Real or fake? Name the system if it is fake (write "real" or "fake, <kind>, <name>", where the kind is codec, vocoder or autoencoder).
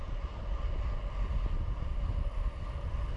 real